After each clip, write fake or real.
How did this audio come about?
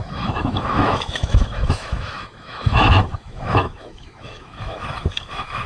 fake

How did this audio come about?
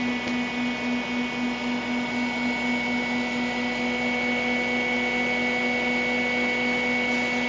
real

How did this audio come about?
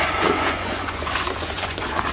fake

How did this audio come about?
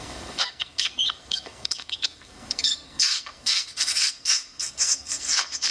fake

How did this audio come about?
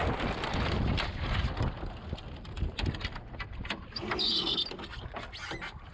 real